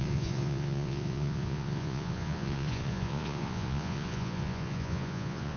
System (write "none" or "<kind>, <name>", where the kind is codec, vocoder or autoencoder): vocoder, Vocos